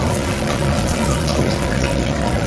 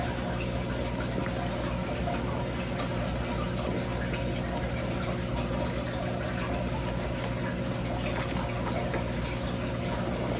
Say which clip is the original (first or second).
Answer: second